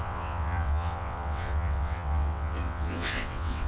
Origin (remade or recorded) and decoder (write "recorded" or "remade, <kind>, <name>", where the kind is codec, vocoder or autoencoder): remade, vocoder, WaveNeXt